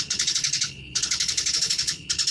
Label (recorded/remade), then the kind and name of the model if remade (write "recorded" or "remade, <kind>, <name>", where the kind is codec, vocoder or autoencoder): remade, codec, HILCodec